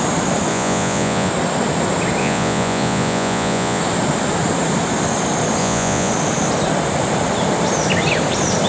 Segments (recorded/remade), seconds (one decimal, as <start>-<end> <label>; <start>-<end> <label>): 0.0-0.5 recorded; 0.5-1.3 remade; 1.3-2.2 recorded; 2.2-3.8 remade; 3.8-5.6 recorded; 5.6-6.1 remade; 6.1-8.7 recorded